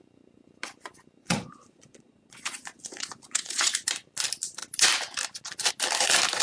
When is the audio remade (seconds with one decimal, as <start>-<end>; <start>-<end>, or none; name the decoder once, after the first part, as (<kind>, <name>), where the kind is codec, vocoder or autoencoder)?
1.2-3.7 (vocoder, Vocos)